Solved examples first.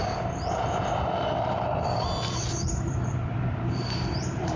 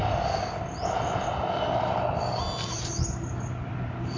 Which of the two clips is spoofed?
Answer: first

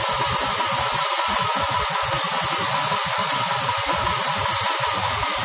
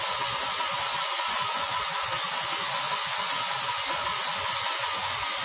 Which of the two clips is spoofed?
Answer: second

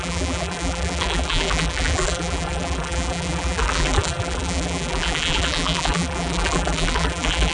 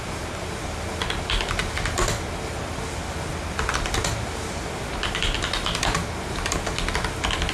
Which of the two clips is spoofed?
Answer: first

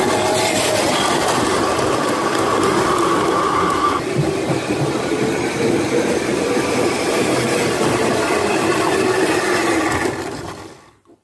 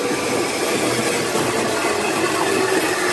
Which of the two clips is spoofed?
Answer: first